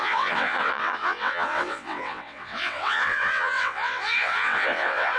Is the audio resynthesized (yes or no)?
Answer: yes